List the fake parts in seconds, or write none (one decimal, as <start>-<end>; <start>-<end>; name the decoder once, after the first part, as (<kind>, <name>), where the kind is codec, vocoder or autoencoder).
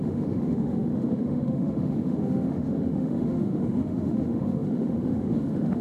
0.0-5.8 (autoencoder, DAC-VAE)